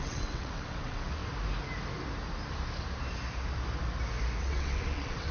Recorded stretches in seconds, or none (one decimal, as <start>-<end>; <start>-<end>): 1.2-4.4